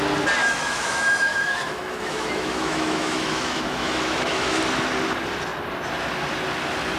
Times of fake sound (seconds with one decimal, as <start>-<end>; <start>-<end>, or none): 0.4-4.6